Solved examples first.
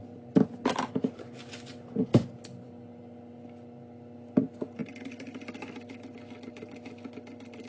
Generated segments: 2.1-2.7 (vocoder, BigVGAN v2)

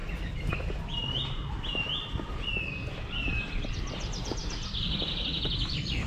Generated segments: 4.4-6.1 (vocoder, BigVGAN v2)

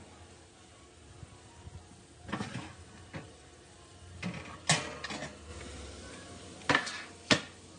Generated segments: none

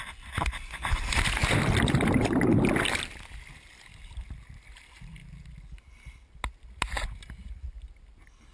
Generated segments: none

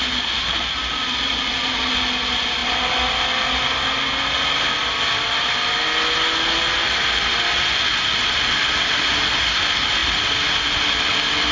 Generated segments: none

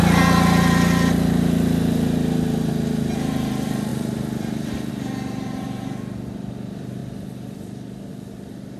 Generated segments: 3.9-4.9 (vocoder, BigVGAN v2); 7.0-8.1